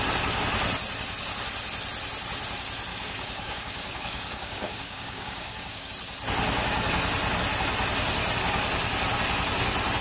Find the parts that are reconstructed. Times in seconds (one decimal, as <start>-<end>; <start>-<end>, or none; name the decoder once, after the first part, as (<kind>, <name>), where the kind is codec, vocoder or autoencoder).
2.9-5.9 (codec, DAC)